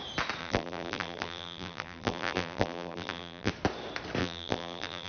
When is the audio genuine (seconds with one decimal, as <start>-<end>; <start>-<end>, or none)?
0.0-0.4; 3.5-4.2